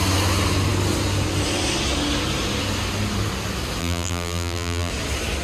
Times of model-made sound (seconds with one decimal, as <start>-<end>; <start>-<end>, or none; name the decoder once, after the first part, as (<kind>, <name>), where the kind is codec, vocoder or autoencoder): 3.8-4.9 (vocoder, BigVGAN v2)